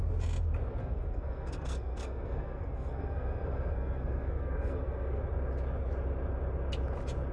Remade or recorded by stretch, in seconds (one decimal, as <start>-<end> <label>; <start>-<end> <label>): 0.0-0.8 recorded; 0.8-5.2 remade; 5.2-7.3 recorded